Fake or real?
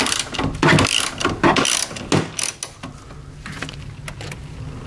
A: real